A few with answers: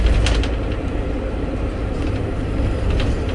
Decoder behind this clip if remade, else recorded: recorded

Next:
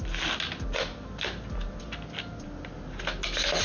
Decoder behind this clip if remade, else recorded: recorded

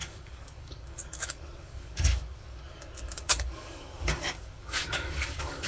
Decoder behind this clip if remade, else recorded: remade, codec, DAC